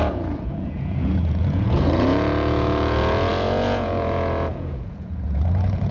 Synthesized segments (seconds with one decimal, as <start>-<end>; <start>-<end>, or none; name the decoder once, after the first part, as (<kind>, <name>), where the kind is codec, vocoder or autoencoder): 0.0-5.9 (vocoder, Vocos)